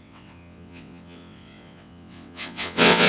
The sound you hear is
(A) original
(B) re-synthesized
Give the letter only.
B